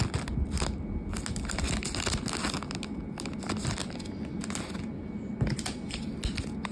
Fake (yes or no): no